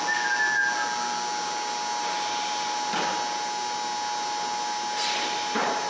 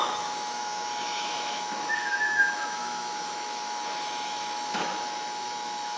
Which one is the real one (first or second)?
first